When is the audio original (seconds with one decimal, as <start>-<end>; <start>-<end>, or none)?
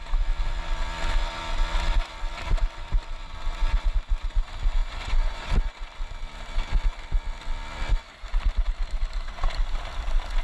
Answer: 0.0-4.8; 5.5-10.4